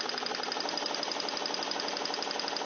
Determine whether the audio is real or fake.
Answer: real